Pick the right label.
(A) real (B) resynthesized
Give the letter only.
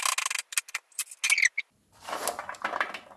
A